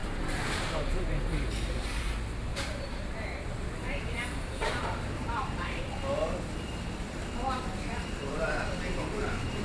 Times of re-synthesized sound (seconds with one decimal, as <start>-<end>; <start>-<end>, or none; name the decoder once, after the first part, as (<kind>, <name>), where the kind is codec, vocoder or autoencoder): 0.0-2.0 (vocoder, BigVGAN v2); 2.5-5.8